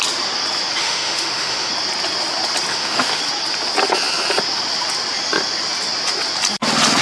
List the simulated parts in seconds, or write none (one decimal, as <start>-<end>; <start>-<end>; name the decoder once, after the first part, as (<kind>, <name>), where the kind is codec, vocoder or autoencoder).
0.8-1.7 (autoencoder, DAC-VAE); 2.7-3.2